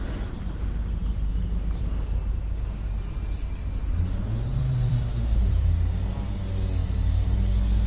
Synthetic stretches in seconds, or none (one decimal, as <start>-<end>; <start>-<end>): 4.5-5.7; 6.8-7.4